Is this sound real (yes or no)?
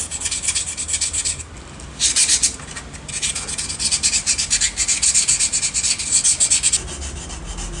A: yes